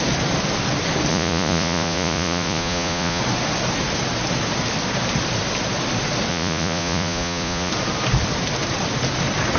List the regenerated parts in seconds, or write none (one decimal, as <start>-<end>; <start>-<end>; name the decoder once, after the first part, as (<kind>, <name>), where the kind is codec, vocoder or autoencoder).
1.1-3.2 (vocoder, Vocos); 6.3-7.7